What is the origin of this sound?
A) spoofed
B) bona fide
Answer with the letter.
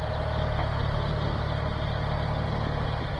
B